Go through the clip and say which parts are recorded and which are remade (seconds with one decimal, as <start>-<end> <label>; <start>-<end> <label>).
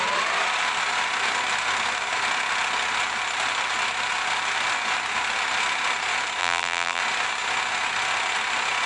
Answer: 0.0-6.4 recorded; 6.4-7.0 remade; 7.0-8.9 recorded